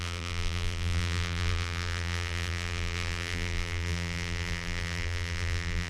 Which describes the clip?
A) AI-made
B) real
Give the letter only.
A